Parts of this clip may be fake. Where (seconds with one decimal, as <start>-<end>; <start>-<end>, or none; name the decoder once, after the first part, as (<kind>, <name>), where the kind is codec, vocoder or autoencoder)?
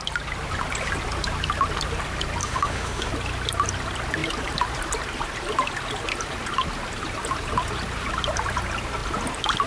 2.4-3.1 (autoencoder, DAC-VAE)